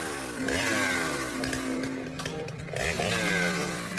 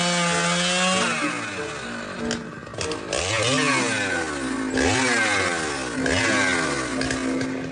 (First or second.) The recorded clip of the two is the second